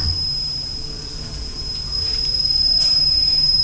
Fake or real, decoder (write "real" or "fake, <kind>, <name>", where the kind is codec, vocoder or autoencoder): real